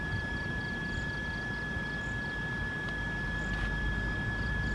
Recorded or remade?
recorded